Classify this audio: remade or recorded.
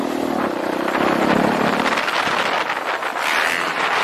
recorded